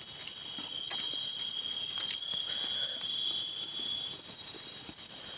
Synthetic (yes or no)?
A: no